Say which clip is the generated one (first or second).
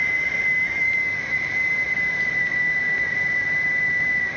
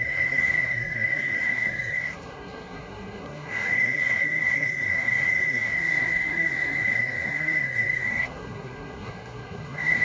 second